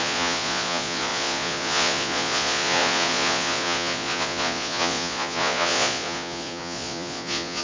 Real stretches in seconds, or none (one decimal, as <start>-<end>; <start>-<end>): none